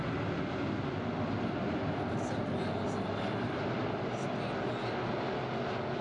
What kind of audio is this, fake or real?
real